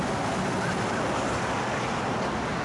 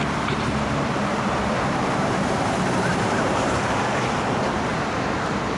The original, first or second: first